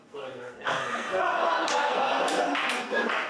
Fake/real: fake